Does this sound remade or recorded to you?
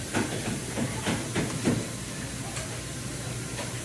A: remade